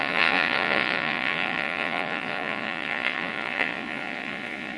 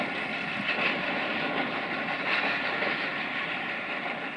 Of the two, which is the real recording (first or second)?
second